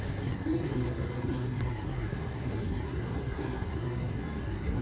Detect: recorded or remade remade